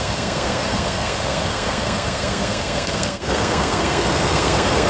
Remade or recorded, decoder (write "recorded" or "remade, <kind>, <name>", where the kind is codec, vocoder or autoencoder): remade, codec, SNAC